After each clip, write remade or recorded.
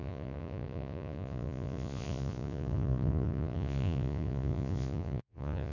remade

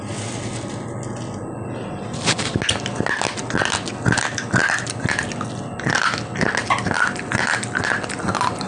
recorded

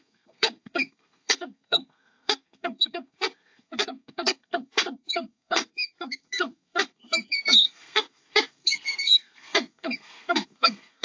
remade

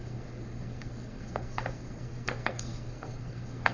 remade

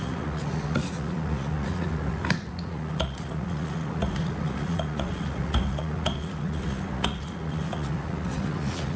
remade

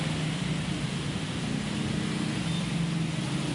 recorded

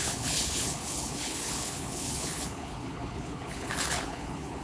remade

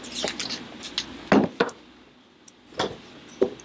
recorded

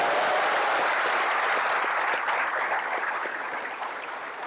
recorded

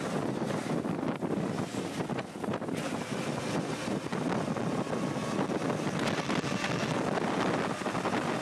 recorded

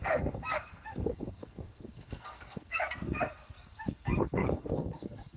remade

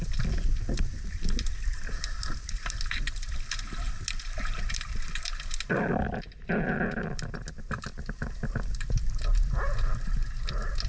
recorded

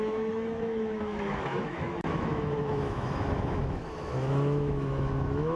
remade